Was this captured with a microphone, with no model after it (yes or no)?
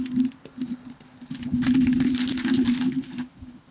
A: no